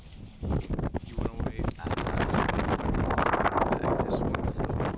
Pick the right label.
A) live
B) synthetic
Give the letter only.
A